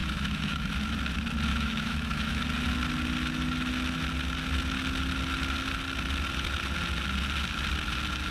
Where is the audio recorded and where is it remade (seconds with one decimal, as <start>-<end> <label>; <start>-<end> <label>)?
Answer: 0.0-0.7 remade; 0.7-1.5 recorded; 1.5-2.4 remade; 2.4-8.3 recorded